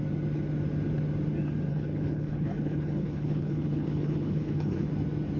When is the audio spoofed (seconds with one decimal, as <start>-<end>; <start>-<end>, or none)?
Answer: 1.7-4.9

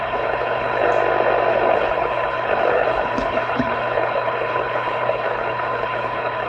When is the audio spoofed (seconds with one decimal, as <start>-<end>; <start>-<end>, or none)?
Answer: 0.0-0.9; 1.5-6.5

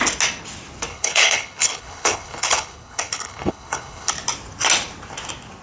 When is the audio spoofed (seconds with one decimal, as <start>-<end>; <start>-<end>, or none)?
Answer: 0.9-4.1

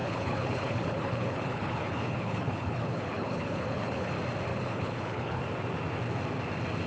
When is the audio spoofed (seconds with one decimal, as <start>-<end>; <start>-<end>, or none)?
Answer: 0.0-4.1; 4.5-5.4

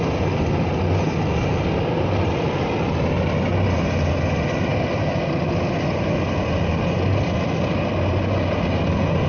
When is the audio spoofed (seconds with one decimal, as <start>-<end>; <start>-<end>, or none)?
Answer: none

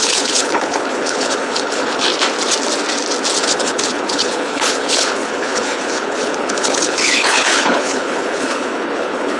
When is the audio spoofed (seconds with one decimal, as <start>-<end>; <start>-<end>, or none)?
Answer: 0.0-2.1; 3.4-9.4